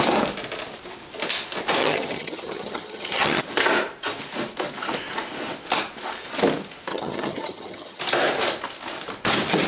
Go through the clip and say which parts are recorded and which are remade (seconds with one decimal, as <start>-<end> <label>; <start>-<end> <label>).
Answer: 0.0-1.8 recorded; 1.8-3.4 remade; 3.4-6.9 recorded; 6.9-8.0 remade; 8.0-9.7 recorded